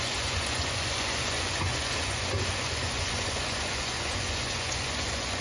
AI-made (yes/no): yes